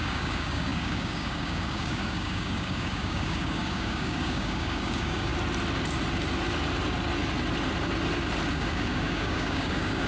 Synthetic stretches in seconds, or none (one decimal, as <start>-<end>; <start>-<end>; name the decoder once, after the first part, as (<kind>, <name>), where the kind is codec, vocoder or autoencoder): 0.0-5.3 (codec, DAC); 8.5-10.1